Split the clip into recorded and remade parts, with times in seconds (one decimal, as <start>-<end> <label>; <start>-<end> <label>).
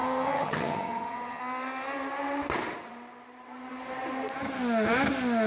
0.0-1.4 remade; 1.4-5.5 recorded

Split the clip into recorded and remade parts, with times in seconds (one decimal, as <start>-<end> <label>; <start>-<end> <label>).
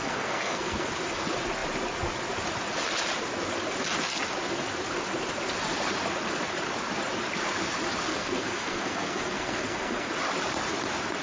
0.0-0.9 remade; 0.9-8.1 recorded; 8.1-10.1 remade; 10.1-11.2 recorded